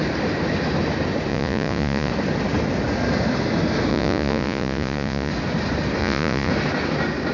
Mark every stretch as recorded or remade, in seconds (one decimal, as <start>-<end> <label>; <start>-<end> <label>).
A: 0.0-1.3 recorded; 1.3-2.1 remade; 2.1-3.9 recorded; 3.9-5.3 remade; 5.3-6.0 recorded; 6.0-6.5 remade; 6.5-7.3 recorded